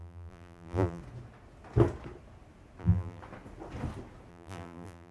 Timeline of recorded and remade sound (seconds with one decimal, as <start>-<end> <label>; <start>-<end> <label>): 0.0-1.0 remade; 1.0-2.8 recorded; 2.8-3.2 remade; 3.2-4.3 recorded; 4.3-5.1 remade